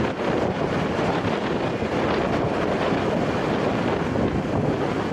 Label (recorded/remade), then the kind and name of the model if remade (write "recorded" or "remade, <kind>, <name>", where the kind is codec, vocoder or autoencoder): recorded